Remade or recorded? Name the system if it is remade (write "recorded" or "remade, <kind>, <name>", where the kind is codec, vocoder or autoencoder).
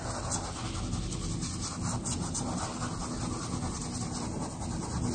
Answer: recorded